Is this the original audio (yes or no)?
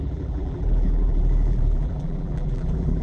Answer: no